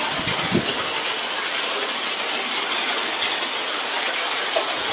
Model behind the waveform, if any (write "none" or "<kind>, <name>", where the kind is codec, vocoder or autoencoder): none